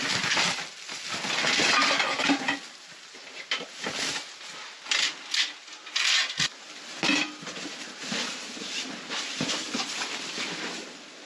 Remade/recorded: recorded